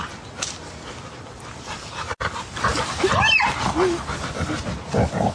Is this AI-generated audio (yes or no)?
no